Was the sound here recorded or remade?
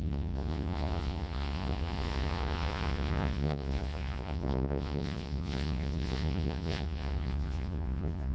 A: remade